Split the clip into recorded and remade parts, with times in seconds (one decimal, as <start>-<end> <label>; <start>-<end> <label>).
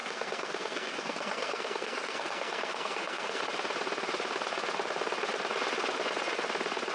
0.0-3.4 remade; 3.4-6.9 recorded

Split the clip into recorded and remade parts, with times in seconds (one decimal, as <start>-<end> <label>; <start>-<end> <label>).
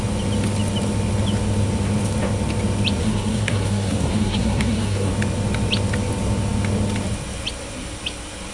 0.0-3.0 recorded; 3.0-5.1 remade; 5.1-8.5 recorded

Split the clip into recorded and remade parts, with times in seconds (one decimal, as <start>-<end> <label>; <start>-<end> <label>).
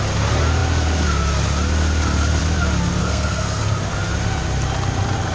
0.0-3.0 recorded; 3.0-3.6 remade; 3.6-5.3 recorded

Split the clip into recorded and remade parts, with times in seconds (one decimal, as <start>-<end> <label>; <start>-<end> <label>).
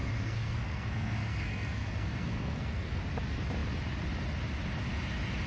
0.0-3.0 remade; 3.0-5.5 recorded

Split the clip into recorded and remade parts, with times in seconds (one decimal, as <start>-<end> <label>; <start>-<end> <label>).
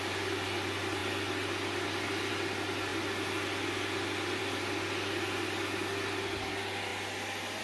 0.0-7.6 recorded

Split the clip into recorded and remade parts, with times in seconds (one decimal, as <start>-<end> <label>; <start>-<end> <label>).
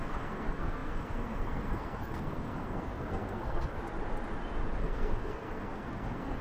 0.0-3.8 remade; 3.8-4.8 recorded; 4.8-6.4 remade